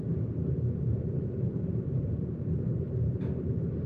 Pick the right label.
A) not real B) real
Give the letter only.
A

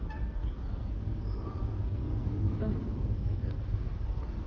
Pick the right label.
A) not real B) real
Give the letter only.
A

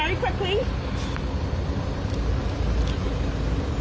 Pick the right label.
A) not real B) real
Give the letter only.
B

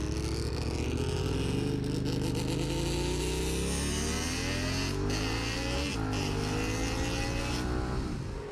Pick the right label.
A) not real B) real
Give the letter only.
B